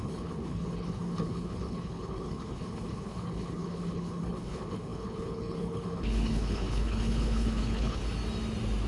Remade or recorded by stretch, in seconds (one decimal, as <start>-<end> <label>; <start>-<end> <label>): 0.0-8.0 remade; 8.0-8.9 recorded